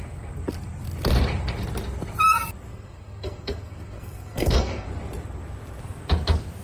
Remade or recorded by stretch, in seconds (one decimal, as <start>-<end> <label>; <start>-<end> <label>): 0.0-2.7 recorded; 2.7-4.9 remade; 4.9-6.6 recorded